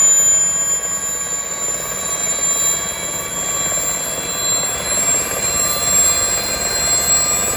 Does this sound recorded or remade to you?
recorded